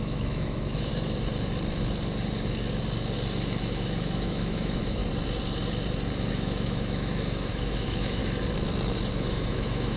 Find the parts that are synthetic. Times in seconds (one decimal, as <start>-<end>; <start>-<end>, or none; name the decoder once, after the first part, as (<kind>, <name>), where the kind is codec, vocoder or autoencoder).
0.0-0.9 (autoencoder, DAC-VAE); 3.6-5.0; 6.3-8.2; 9.1-10.0